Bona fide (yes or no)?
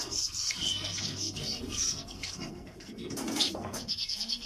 no